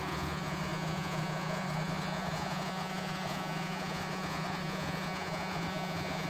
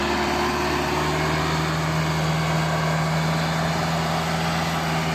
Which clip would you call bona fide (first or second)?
second